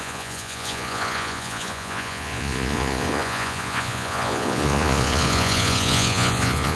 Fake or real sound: fake